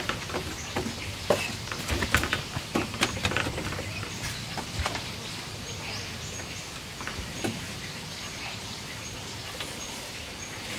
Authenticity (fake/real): real